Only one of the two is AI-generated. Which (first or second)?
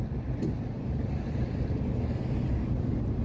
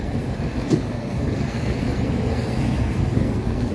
second